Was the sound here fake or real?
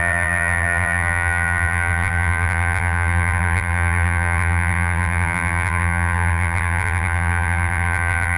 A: fake